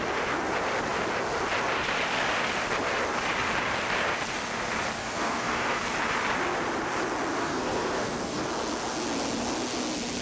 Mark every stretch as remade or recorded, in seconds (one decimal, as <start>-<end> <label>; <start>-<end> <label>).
0.0-5.0 recorded; 5.0-5.8 remade; 5.8-7.4 recorded; 7.4-8.4 remade; 8.4-10.2 recorded